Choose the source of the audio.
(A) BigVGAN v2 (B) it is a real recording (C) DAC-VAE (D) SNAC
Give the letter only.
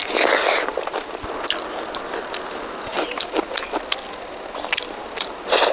B